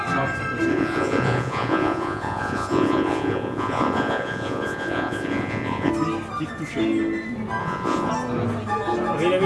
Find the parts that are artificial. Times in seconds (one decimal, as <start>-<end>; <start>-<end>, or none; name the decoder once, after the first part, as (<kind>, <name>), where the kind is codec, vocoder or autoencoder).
0.7-5.9 (vocoder, Vocos); 7.6-8.1

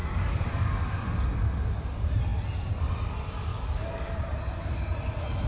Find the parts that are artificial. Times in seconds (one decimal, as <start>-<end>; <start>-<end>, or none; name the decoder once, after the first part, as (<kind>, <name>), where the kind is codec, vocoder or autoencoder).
0.0-0.7 (codec, DAC); 3.5-4.1